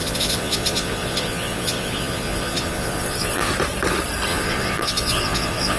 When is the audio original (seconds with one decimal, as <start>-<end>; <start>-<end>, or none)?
3.5-4.3